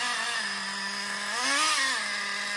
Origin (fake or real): real